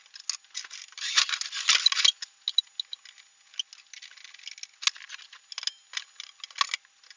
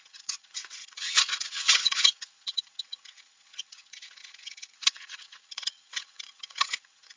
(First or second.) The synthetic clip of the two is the second